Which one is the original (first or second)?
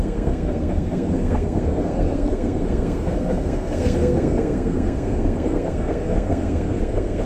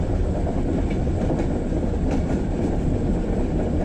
second